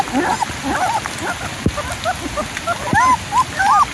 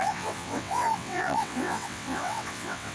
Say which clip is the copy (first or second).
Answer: second